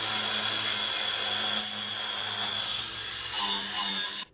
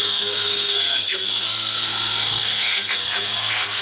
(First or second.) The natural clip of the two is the first